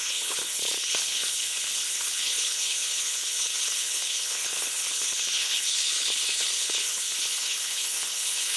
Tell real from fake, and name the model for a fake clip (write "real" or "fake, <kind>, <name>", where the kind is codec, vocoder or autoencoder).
fake, codec, HILCodec